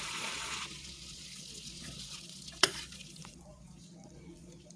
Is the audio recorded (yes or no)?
no